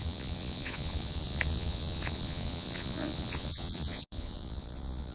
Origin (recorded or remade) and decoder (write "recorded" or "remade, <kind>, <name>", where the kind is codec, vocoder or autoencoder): remade, vocoder, Vocos